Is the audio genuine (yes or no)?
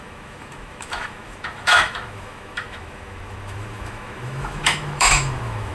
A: no